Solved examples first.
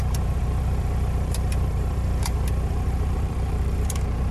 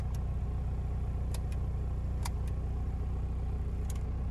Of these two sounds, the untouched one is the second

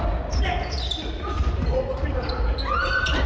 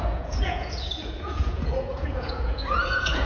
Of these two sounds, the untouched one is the first